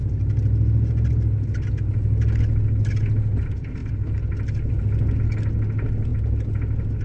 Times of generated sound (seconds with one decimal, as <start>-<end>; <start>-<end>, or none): none